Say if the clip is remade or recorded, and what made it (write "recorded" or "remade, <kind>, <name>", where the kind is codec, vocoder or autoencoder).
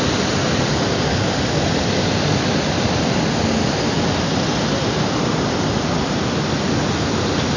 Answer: recorded